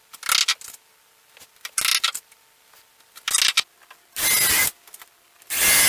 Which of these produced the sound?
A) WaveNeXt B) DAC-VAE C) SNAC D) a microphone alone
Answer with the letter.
D